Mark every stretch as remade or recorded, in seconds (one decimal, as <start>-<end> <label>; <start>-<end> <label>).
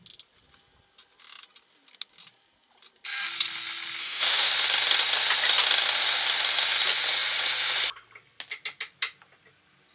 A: 0.0-4.0 recorded; 4.0-4.5 remade; 4.5-9.9 recorded